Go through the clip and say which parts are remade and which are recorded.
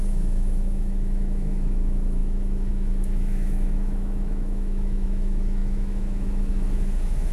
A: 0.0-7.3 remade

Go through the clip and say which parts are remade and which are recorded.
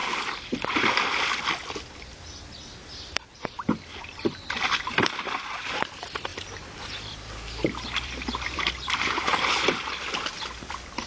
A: 0.0-6.3 recorded; 6.3-10.7 remade; 10.7-11.1 recorded